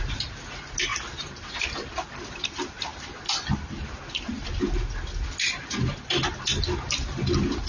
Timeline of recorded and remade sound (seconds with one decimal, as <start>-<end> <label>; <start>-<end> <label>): 0.0-0.9 recorded; 0.9-1.4 remade; 1.4-7.7 recorded